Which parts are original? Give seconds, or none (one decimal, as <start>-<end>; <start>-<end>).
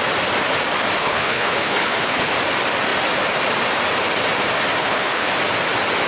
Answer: 0.0-1.0; 2.3-4.8; 5.3-6.1